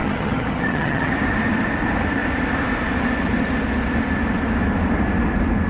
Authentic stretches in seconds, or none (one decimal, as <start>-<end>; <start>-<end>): 1.1-5.7